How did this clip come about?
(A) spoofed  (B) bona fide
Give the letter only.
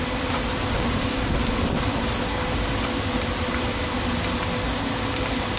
B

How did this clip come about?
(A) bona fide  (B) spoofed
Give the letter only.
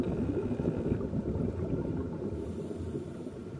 B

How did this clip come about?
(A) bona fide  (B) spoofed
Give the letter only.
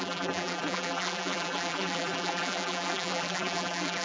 B